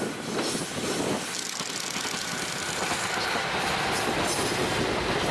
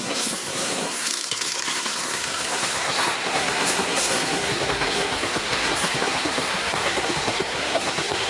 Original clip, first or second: first